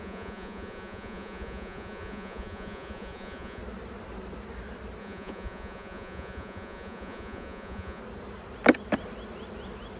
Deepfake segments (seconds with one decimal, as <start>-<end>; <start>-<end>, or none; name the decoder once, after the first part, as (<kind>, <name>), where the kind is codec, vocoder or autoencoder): 0.0-3.6 (vocoder, Vocos); 5.0-8.0